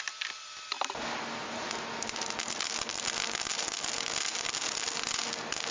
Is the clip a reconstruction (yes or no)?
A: no